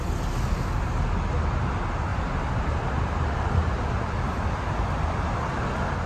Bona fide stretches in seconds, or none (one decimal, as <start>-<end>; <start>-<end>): 0.0-6.1